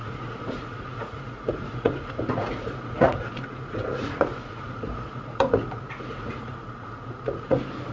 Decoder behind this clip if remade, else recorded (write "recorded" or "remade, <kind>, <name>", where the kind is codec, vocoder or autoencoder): remade, vocoder, Vocos